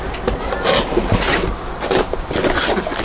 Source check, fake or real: real